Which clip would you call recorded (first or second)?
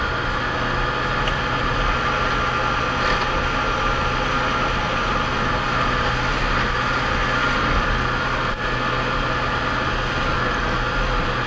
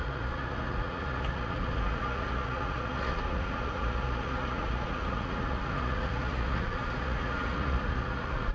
first